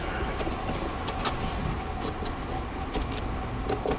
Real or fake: real